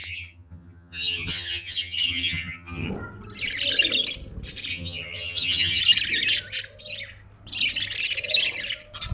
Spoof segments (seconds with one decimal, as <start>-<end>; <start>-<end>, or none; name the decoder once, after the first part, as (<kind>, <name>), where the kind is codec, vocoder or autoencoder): 0.0-2.9 (vocoder, HiFi-GAN); 4.7-5.8